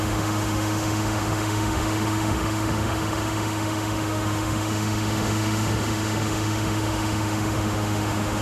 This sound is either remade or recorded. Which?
remade